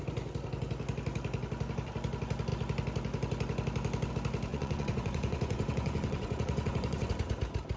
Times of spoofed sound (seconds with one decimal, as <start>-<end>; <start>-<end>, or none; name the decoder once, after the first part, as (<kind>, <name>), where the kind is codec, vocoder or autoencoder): 4.5-7.1 (vocoder, Vocos)